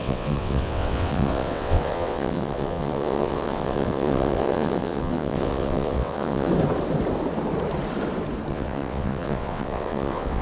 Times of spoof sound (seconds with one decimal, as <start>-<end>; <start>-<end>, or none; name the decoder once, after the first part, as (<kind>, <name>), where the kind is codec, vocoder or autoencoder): 0.0-6.5 (vocoder, WaveNeXt); 8.5-10.4